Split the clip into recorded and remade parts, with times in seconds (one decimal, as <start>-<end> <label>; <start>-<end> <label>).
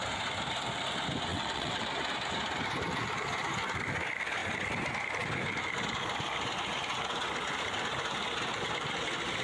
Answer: 0.0-1.3 recorded; 1.3-1.9 remade; 1.9-9.4 recorded